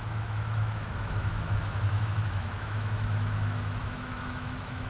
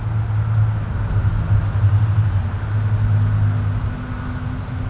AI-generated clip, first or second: first